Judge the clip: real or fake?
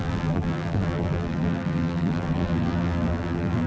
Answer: fake